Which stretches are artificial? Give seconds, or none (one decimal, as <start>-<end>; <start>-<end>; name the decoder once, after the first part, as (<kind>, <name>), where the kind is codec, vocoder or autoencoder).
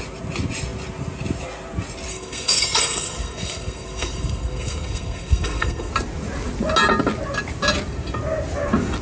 2.1-5.9 (codec, SNAC)